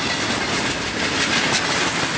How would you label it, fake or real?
real